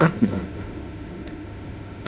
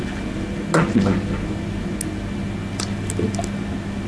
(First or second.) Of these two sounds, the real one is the second